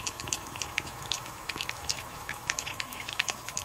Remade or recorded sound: remade